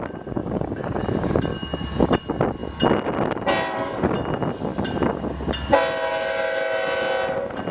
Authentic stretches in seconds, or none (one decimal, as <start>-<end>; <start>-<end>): 0.0-0.4; 1.0-7.7